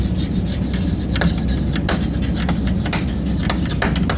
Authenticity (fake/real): real